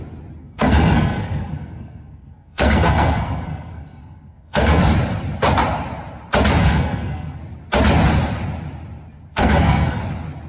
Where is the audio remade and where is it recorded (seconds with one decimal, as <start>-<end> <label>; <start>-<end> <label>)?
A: 0.0-0.4 recorded; 0.4-4.8 remade; 4.8-6.6 recorded; 6.6-7.4 remade; 7.4-9.3 recorded; 9.3-10.0 remade; 10.0-10.5 recorded